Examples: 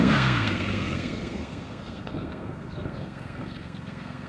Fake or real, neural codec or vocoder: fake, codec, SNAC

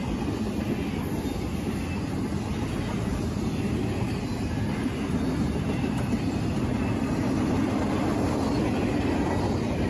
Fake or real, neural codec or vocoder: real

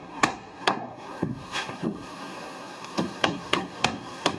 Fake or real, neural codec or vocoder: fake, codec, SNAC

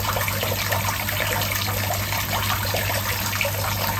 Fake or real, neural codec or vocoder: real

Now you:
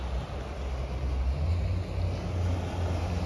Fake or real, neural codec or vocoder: real